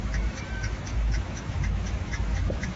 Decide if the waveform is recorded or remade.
remade